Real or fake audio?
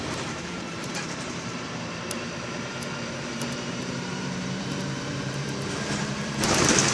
fake